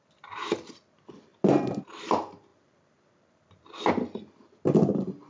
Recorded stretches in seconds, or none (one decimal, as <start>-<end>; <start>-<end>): none

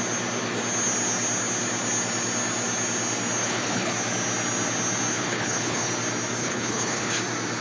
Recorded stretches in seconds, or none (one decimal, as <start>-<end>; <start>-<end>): 0.0-3.4; 3.9-5.1; 5.9-6.4; 7.1-7.6

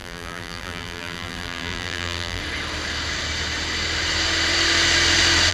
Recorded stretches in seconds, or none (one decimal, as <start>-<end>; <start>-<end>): 2.4-5.5

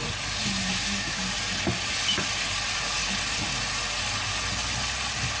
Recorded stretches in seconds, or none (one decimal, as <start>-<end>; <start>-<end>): 0.0-0.7; 1.2-5.4